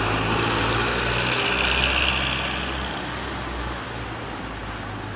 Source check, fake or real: real